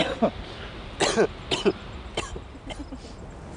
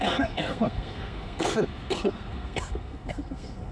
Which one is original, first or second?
first